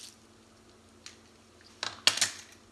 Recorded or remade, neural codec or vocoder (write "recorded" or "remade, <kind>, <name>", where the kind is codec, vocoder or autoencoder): recorded